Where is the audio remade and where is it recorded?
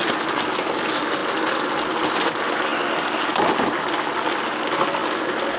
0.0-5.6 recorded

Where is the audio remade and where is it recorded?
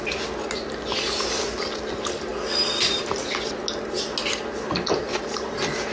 0.0-5.9 recorded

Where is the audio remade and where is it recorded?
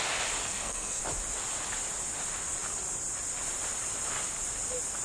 0.0-0.4 recorded; 0.4-1.0 remade; 1.0-5.0 recorded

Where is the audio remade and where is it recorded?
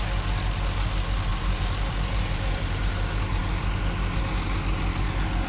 0.0-1.3 recorded; 1.3-3.0 remade; 3.0-5.5 recorded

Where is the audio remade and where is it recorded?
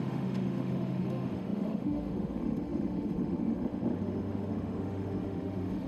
0.0-5.9 remade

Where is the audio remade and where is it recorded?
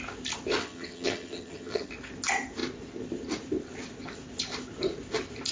0.0-0.6 recorded; 0.6-1.9 remade; 1.9-5.5 recorded